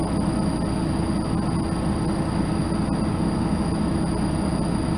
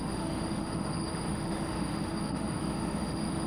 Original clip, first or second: first